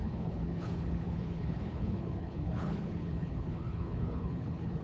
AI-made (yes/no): yes